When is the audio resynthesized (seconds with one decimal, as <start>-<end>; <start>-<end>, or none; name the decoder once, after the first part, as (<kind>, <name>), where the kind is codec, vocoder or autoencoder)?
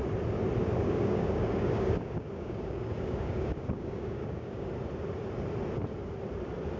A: 0.6-4.7 (codec, DAC)